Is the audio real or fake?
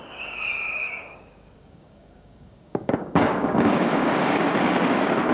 fake